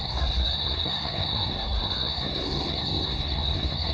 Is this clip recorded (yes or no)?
no